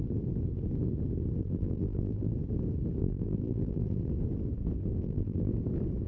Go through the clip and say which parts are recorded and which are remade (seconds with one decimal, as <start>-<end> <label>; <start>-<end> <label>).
0.0-1.4 recorded; 1.4-2.3 remade; 2.3-3.0 recorded; 3.0-4.1 remade; 4.1-5.0 recorded; 5.0-5.5 remade; 5.5-6.1 recorded